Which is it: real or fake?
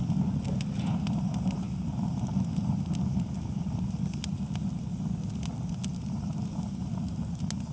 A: real